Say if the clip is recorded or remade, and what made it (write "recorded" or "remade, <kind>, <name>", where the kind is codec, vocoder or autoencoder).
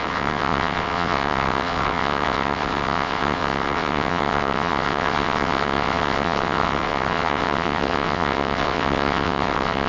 remade, vocoder, WaveNeXt